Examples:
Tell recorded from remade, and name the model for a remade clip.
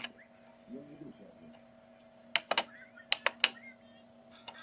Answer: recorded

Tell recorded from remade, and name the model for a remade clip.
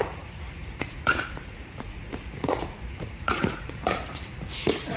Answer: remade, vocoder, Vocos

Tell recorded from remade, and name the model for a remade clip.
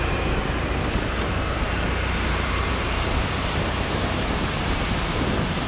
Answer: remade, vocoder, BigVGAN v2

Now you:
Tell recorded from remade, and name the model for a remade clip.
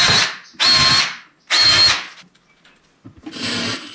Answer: recorded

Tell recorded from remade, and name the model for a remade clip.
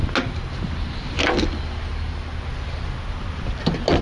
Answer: recorded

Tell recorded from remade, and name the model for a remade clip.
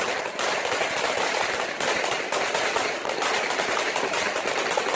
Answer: recorded